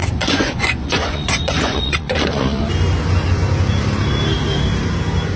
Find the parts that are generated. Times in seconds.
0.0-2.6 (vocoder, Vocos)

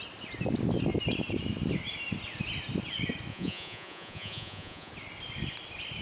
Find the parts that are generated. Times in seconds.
3.3-4.9 (vocoder, Vocos)

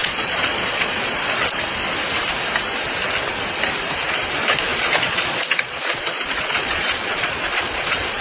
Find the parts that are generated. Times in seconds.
0.0-1.2 (vocoder, Vocos); 4.7-8.2

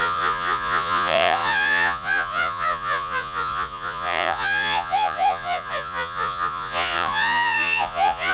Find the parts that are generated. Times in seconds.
0.0-8.3 (vocoder, Vocos)

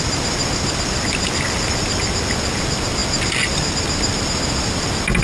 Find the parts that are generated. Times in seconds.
none

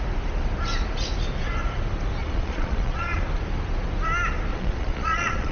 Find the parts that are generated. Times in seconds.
2.2-3.2 (vocoder, Vocos); 4.5-5.5

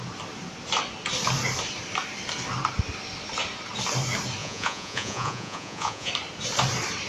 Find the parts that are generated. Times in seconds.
4.4-6.1 (vocoder, Vocos)